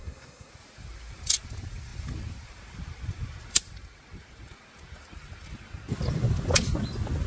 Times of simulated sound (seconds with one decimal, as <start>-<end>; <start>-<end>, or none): 0.0-0.5